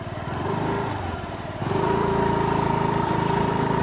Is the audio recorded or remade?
remade